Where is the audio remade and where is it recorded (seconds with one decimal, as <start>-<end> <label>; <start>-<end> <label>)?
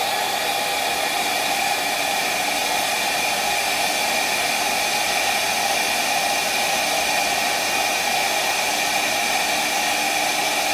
0.0-10.7 recorded